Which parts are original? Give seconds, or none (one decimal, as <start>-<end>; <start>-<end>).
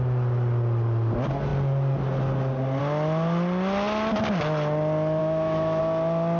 0.0-5.2; 5.8-6.4